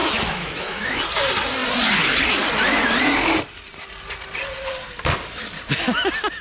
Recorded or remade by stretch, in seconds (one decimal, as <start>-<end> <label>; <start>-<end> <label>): 0.0-1.0 remade; 1.0-6.4 recorded

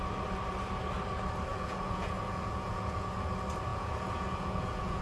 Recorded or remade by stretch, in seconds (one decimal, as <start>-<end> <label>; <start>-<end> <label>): 0.0-1.5 recorded; 1.5-3.1 remade; 3.1-3.7 recorded; 3.7-5.0 remade

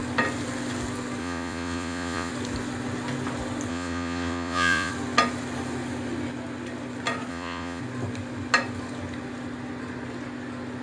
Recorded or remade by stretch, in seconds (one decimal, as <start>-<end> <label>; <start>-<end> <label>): 0.0-1.2 recorded; 1.2-2.3 remade; 2.3-3.7 recorded; 3.7-4.9 remade; 4.9-7.3 recorded; 7.3-7.8 remade; 7.8-10.8 recorded

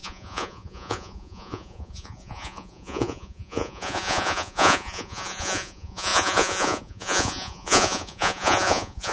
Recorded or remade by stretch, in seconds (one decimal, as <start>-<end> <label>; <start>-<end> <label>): 0.0-9.1 remade